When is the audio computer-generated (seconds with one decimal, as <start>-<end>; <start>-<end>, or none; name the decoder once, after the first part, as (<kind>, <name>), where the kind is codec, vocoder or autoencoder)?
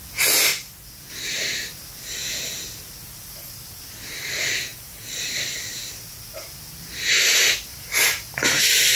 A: 4.7-5.5 (vocoder, BigVGAN v2); 7.7-8.6